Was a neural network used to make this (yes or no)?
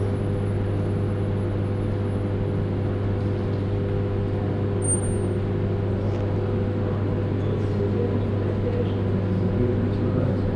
no